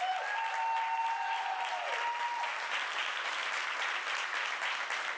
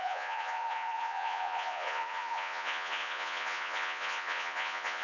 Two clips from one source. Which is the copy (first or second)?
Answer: second